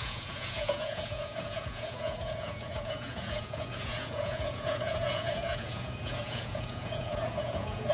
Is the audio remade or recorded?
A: remade